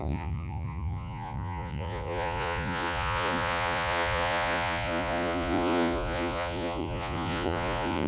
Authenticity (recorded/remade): remade